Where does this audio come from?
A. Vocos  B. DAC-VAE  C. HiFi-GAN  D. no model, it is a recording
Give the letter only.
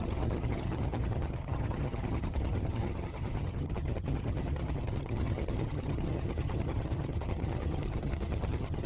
C